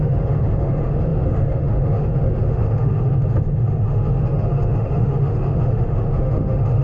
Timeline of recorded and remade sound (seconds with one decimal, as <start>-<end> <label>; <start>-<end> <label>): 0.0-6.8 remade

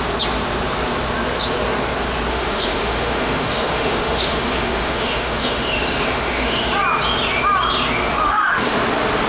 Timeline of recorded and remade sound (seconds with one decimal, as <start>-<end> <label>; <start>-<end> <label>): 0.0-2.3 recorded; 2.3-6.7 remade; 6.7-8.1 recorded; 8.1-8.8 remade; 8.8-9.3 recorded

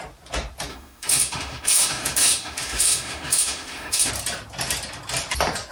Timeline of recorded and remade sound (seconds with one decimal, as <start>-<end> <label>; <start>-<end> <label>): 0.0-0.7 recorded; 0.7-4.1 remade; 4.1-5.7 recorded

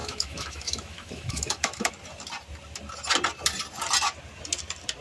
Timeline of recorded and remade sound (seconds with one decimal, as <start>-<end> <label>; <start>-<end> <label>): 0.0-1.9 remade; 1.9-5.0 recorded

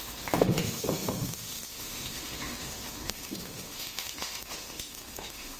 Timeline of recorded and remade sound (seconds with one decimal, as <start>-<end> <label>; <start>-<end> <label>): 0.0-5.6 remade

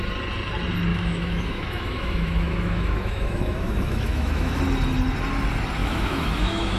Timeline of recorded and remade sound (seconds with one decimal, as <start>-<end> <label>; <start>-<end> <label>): 0.0-0.9 recorded; 0.9-4.6 remade; 4.6-5.8 recorded; 5.8-6.8 remade

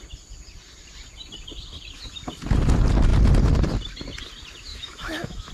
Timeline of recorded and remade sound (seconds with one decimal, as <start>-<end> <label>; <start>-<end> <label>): 0.0-4.7 recorded; 4.7-5.5 remade

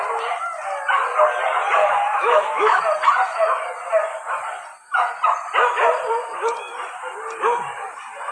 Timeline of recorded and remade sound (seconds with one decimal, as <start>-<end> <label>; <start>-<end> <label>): 0.0-1.8 recorded; 1.8-2.8 remade; 2.8-8.3 recorded